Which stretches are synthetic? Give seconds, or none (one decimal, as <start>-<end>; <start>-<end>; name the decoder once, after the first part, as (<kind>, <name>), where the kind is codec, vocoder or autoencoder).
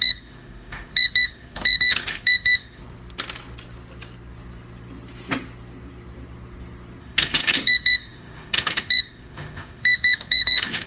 0.0-2.8 (autoencoder, DAC-VAE); 7.0-10.9